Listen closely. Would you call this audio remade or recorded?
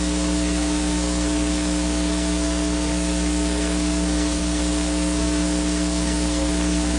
remade